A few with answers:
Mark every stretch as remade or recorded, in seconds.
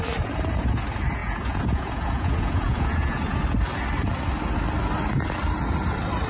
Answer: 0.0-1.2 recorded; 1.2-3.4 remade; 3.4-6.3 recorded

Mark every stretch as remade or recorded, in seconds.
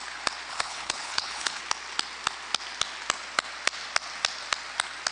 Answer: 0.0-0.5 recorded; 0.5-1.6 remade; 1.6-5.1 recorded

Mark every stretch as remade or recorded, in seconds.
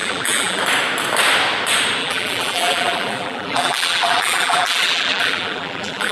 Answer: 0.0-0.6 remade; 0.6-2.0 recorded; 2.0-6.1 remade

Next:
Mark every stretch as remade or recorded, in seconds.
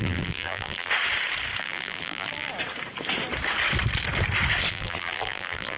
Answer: 0.0-0.9 remade; 0.9-1.6 recorded; 1.6-2.5 remade; 2.5-4.7 recorded; 4.7-5.8 remade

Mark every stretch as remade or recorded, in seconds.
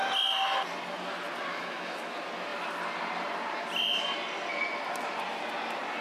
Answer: 0.0-1.5 recorded; 1.5-2.1 remade; 2.1-6.0 recorded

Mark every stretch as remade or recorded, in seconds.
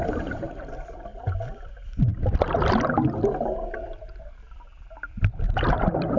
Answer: 0.0-1.1 remade; 1.1-1.7 recorded; 1.7-6.2 remade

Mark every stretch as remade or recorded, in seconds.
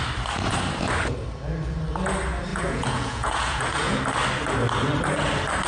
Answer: 0.0-2.5 recorded; 2.5-4.0 remade; 4.0-5.7 recorded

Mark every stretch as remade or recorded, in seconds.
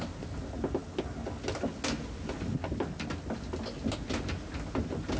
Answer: 0.0-5.2 recorded